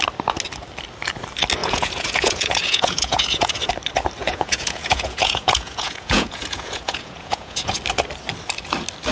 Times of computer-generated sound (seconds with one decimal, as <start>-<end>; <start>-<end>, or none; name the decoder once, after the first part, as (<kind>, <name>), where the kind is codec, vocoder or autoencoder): 1.6-3.7 (vocoder, Vocos); 4.2-7.8